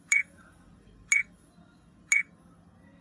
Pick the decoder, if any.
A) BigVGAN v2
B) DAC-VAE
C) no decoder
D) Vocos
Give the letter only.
C